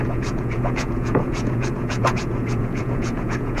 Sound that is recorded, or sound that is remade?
remade